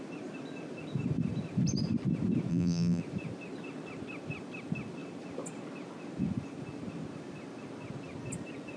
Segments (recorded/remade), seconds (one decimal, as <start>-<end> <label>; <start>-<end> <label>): 0.0-2.5 recorded; 2.5-3.0 remade; 3.0-8.8 recorded